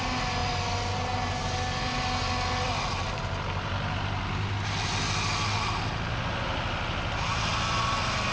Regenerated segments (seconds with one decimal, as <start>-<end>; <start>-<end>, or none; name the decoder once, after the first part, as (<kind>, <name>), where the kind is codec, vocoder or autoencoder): none